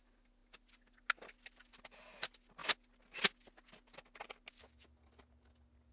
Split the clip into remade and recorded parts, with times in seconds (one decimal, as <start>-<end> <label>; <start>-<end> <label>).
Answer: 0.0-5.9 recorded